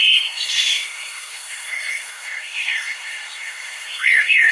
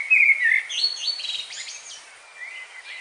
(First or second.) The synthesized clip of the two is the first